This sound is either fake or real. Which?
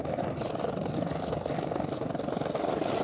real